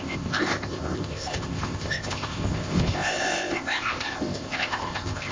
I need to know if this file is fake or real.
fake